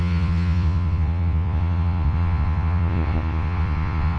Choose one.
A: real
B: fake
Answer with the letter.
B